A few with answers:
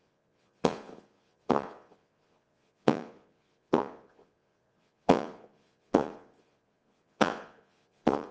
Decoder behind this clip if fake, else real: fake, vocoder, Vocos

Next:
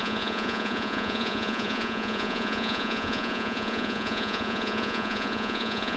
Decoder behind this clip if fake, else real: fake, vocoder, Vocos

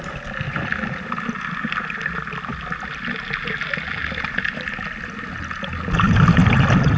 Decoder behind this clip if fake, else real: real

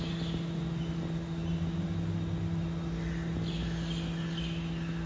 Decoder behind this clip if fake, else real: real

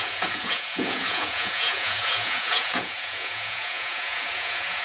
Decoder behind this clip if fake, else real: fake, vocoder, Vocos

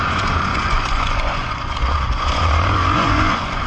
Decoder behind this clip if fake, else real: fake, vocoder, Vocos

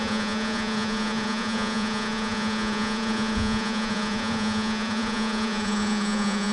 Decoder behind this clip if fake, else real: fake, vocoder, Vocos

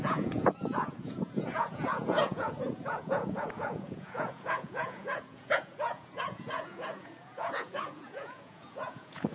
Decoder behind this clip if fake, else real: fake, vocoder, Vocos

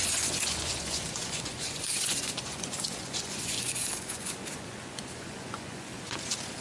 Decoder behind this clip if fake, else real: fake, vocoder, Vocos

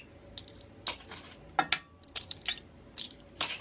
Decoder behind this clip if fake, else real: real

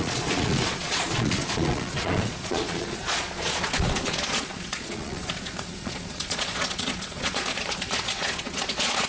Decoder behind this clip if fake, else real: fake, vocoder, Vocos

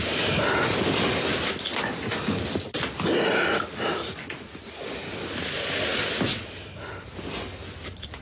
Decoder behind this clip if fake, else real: real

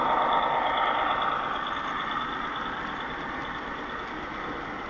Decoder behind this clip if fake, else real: real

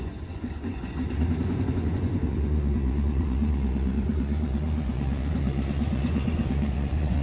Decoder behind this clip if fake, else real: fake, vocoder, Vocos